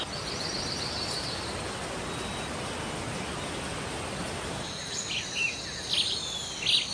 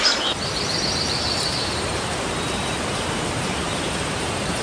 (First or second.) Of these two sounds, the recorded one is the first